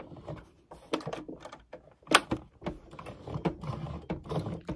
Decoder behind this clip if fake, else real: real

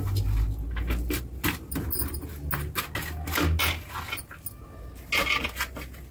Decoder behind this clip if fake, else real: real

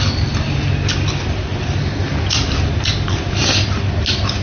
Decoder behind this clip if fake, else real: real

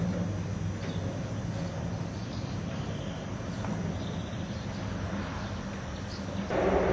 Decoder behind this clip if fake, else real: real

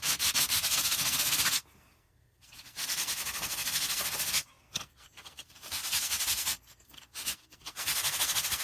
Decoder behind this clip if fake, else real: fake, codec, SNAC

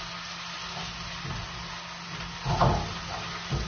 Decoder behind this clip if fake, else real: real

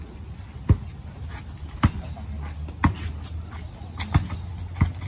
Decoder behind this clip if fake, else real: real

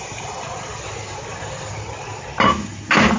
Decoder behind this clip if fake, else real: real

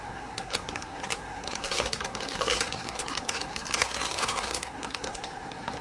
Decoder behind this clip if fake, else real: fake, codec, SNAC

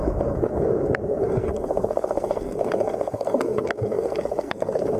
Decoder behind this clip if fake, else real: fake, codec, SNAC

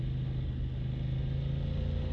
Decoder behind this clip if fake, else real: real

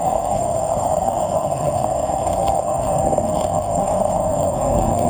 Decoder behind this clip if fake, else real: fake, codec, SNAC